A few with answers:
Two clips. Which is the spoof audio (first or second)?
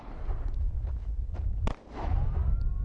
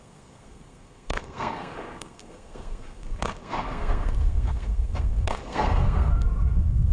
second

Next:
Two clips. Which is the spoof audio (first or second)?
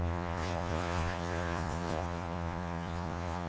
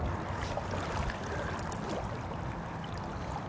first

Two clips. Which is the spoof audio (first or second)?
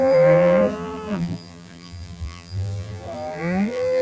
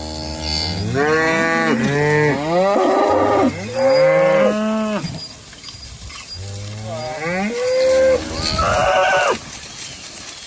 first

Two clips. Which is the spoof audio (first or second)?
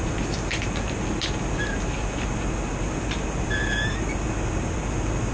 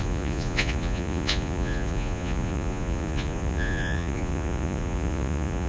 second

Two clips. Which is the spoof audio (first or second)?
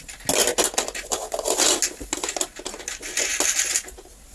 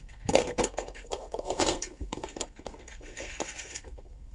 second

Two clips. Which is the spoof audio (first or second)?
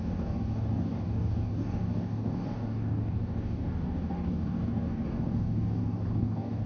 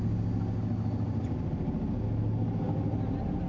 first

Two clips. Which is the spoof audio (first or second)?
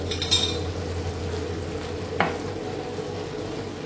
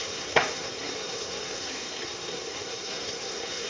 second